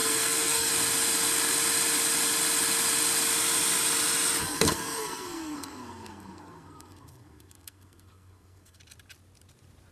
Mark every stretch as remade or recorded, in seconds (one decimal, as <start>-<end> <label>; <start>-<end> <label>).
0.0-0.7 remade; 0.7-4.4 recorded; 4.4-8.8 remade; 8.8-9.9 recorded